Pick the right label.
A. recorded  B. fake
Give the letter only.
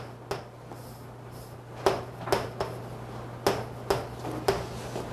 A